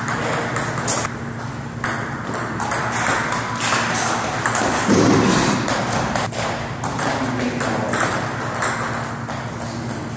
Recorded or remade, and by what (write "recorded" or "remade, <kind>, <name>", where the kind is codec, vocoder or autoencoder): recorded